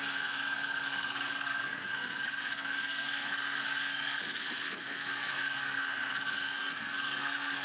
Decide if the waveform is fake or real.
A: fake